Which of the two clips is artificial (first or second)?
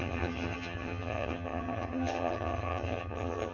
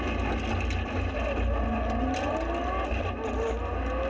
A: first